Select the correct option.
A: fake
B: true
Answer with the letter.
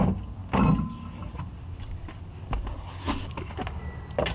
B